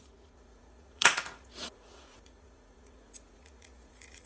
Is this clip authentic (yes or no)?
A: no